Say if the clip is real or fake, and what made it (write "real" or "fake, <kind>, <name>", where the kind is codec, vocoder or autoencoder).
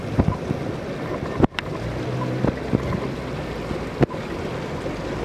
real